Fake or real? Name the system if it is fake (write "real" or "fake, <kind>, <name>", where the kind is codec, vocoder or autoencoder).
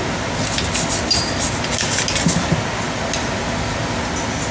real